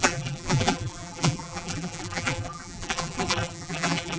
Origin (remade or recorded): remade